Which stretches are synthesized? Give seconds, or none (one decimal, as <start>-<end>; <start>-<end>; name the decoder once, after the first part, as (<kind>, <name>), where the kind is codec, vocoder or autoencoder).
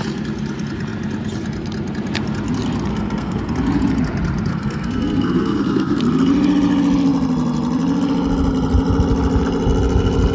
2.9-3.4 (codec, SNAC); 4.5-6.0